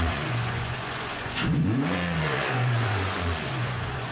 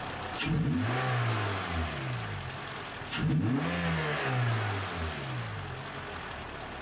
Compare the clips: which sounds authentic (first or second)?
second